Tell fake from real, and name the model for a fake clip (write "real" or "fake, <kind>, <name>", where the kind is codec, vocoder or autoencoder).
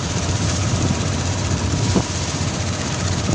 fake, vocoder, BigVGAN v2